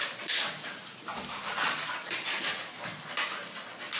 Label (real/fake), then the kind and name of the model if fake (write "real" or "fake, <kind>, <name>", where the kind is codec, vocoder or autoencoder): real